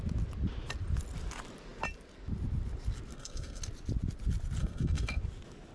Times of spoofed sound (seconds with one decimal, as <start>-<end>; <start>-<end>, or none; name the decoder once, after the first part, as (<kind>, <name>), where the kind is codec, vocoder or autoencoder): 3.1-3.6 (codec, SNAC); 4.6-5.2